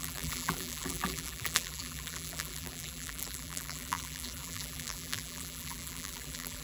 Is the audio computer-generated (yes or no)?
yes